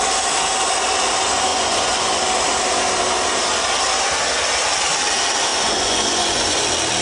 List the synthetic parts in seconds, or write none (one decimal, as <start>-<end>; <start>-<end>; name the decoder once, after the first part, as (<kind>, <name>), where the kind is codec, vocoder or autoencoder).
1.5-2.2 (vocoder, Vocos); 5.5-6.6